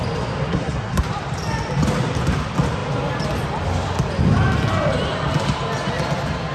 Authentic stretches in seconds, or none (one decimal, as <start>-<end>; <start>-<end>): 0.0-0.5; 1.0-6.5